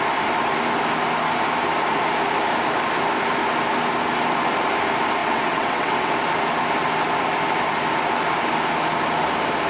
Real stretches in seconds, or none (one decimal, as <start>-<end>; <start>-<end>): 0.0-5.2; 6.1-9.7